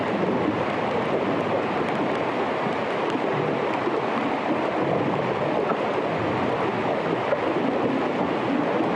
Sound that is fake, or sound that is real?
real